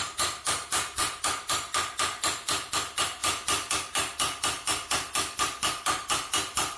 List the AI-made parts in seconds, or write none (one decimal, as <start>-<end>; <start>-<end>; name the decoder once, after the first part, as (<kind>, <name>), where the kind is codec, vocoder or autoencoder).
none